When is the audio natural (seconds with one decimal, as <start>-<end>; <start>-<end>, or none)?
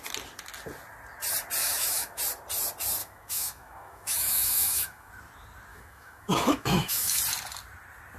0.0-1.6; 2.2-3.0; 5.1-5.7; 7.2-8.2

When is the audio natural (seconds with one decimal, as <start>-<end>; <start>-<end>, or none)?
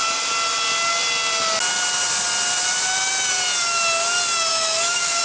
0.0-4.5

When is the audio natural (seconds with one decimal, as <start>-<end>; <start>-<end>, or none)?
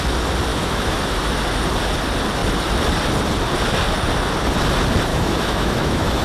0.0-0.5; 1.3-5.1